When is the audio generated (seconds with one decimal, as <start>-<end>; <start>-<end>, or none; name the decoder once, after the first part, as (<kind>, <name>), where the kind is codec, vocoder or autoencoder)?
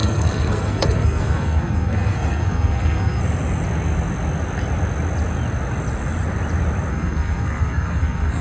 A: 0.0-3.2 (codec, SNAC); 6.9-8.4